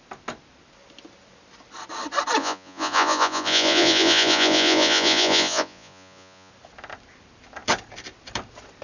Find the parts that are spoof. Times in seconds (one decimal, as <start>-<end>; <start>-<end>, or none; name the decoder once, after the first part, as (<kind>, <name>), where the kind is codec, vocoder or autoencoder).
2.4-6.5 (vocoder, Vocos)